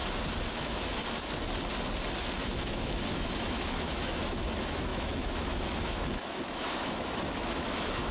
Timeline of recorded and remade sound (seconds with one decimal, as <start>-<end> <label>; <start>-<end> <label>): 0.0-0.5 recorded; 0.5-1.0 remade; 1.0-2.4 recorded; 2.4-8.1 remade